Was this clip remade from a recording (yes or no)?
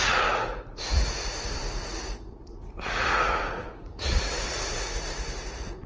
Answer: yes